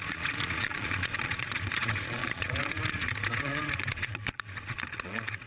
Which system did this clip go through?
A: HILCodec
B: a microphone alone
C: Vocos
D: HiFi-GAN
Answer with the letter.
C